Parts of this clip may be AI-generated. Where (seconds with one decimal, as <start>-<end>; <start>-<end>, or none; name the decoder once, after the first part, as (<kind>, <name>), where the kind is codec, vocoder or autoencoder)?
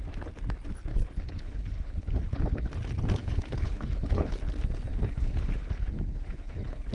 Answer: 0.9-2.7 (codec, HILCodec); 3.2-4.4; 4.9-6.9